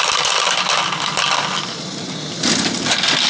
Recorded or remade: remade